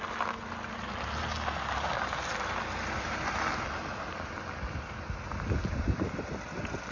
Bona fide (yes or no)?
yes